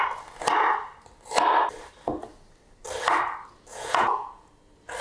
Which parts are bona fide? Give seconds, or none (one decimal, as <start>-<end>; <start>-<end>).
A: 0.0-3.7; 4.5-5.0